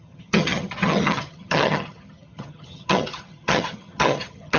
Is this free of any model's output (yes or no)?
no